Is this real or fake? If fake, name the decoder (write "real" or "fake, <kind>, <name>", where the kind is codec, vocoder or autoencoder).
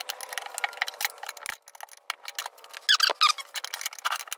real